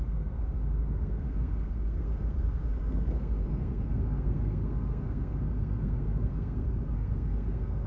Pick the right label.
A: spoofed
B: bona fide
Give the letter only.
A